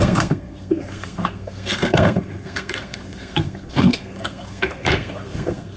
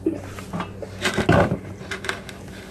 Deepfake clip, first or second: first